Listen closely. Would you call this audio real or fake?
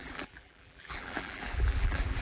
fake